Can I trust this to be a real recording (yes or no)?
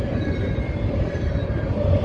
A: yes